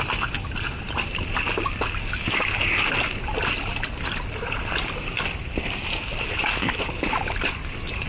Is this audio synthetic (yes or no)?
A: no